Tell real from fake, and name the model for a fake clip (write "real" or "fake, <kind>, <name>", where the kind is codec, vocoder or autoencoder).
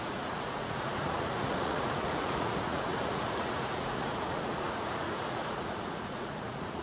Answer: fake, vocoder, Vocos